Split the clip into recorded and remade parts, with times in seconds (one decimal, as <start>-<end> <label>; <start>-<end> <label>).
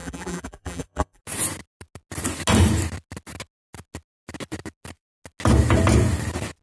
0.0-1.2 remade; 1.2-6.6 recorded